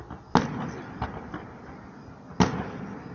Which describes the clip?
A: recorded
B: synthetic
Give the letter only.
A